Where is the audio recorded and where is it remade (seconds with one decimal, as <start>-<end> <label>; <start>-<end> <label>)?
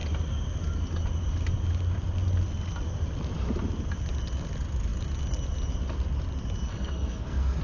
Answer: 0.0-6.7 recorded; 6.7-7.6 remade